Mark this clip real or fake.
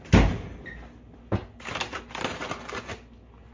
real